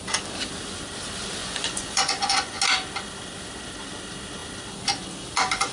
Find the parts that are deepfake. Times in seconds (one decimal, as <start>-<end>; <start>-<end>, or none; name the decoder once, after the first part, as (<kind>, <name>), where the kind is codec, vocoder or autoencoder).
1.4-2.6 (vocoder, Vocos)